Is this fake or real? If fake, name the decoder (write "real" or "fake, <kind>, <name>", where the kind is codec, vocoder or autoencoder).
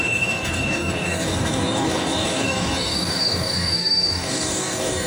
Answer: fake, codec, DAC